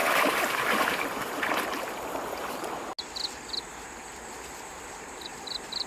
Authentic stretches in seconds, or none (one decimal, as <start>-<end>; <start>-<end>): 0.0-2.5; 2.9-4.7